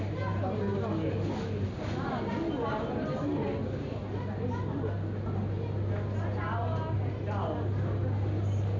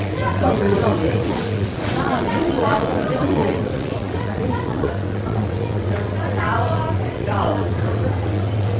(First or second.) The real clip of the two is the first